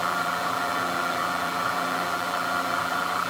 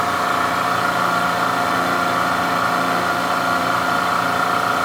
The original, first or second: second